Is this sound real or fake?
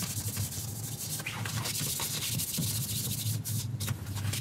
real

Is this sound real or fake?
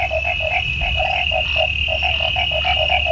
real